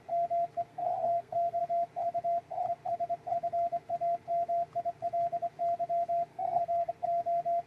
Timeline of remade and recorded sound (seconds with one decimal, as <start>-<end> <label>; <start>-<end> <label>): 0.0-0.7 recorded; 0.7-1.6 remade; 1.6-6.3 recorded; 6.3-6.9 remade; 6.9-7.7 recorded